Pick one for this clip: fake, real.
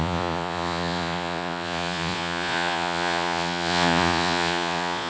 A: fake